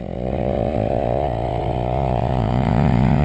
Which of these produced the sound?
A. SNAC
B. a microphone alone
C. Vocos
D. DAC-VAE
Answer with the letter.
C